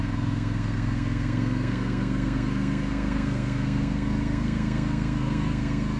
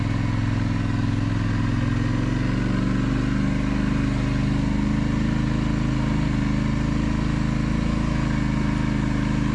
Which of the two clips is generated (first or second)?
first